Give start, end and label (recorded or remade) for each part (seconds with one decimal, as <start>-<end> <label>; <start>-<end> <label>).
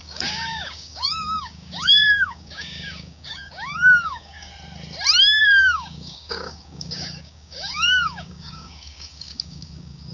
0.0-4.5 remade; 4.5-5.4 recorded; 5.4-10.1 remade